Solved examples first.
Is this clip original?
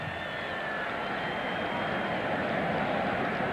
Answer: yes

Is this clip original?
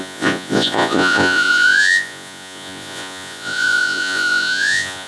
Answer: no